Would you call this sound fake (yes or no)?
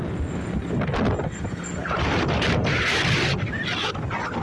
no